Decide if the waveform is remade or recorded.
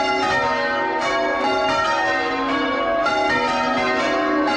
recorded